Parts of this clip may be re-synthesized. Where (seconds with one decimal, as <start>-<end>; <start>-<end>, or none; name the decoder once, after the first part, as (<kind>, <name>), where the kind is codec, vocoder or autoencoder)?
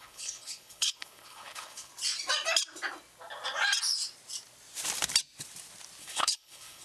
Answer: 0.0-1.9 (codec, HILCodec); 6.0-6.8